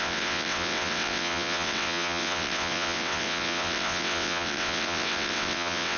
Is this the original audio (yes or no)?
no